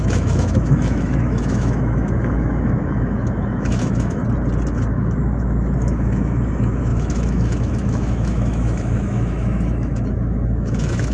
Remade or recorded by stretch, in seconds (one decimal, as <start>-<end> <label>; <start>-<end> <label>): 0.0-4.2 remade; 4.2-4.9 recorded; 4.9-11.1 remade